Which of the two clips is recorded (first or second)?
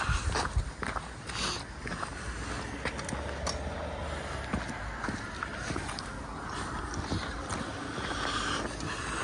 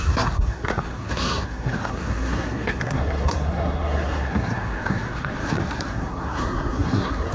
first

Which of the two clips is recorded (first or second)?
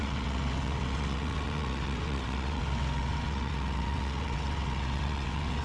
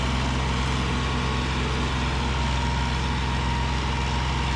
second